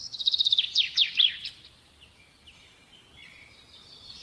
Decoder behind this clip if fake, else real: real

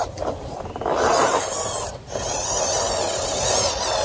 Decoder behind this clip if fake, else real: real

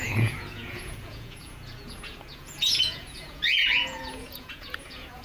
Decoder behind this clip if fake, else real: fake, vocoder, Vocos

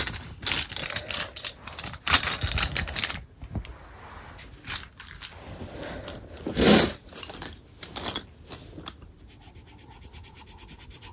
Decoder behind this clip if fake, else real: real